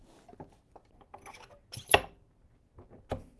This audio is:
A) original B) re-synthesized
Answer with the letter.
A